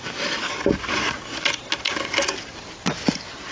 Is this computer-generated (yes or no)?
no